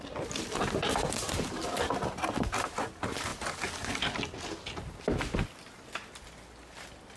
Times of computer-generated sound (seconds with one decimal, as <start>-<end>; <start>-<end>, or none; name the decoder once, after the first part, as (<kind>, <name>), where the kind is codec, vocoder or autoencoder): none